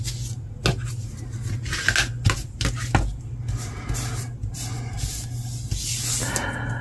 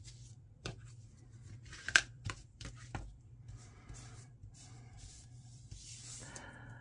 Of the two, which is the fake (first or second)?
second